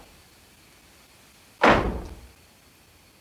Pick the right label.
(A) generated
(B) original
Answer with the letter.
B